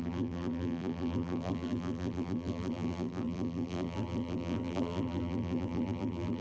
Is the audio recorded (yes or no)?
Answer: no